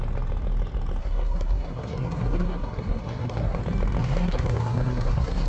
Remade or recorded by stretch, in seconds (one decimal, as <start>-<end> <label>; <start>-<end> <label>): 0.0-1.0 recorded; 1.0-3.6 remade; 3.6-4.0 recorded; 4.0-5.5 remade